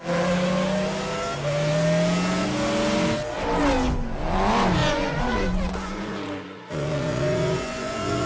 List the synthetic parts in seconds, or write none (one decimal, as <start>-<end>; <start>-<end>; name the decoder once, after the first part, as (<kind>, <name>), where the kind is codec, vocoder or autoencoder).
4.8-8.3 (vocoder, Vocos)

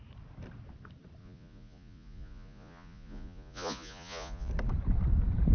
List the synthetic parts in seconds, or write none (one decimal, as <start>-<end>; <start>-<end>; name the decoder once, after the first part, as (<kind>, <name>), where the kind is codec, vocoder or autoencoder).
1.2-4.5 (vocoder, Vocos)